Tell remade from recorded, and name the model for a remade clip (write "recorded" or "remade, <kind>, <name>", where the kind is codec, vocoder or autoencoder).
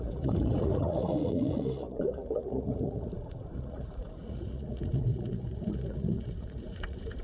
remade, vocoder, Vocos